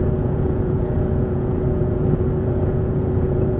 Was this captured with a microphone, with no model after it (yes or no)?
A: no